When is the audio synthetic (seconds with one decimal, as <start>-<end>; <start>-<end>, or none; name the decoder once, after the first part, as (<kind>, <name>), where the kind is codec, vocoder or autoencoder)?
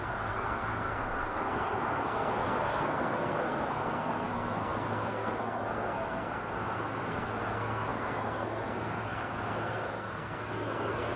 0.0-11.2 (codec, SNAC)